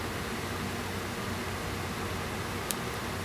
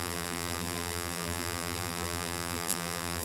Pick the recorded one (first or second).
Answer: first